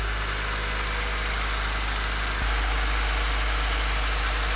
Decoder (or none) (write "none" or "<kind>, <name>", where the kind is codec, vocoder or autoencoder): none